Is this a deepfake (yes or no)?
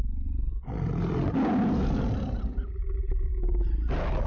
no